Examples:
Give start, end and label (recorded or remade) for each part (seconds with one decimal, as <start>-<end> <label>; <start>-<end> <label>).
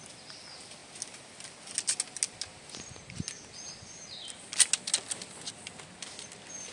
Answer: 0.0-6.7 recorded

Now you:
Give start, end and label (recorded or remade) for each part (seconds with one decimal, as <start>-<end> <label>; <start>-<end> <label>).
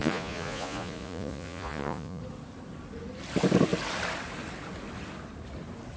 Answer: 0.0-2.2 remade; 2.2-6.0 recorded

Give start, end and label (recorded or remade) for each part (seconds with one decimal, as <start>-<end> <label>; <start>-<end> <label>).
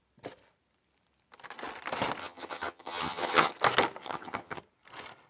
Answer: 0.0-2.2 recorded; 2.2-3.5 remade; 3.5-4.0 recorded; 4.0-4.6 remade; 4.6-5.3 recorded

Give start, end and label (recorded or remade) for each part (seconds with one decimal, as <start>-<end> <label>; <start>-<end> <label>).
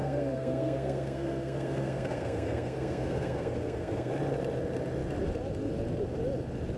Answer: 0.0-4.1 remade; 4.1-6.8 recorded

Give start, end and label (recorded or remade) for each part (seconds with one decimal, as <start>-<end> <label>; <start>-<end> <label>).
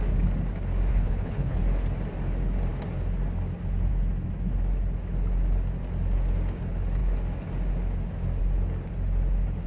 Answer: 0.0-0.9 recorded; 0.9-1.6 remade; 1.6-9.7 recorded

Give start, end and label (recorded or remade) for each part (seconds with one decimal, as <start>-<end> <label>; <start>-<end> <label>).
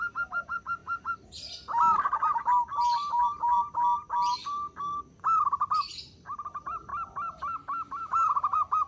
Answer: 0.0-0.8 remade; 0.8-3.2 recorded; 3.2-3.6 remade; 3.6-6.0 recorded; 6.0-6.9 remade; 6.9-7.9 recorded; 7.9-8.9 remade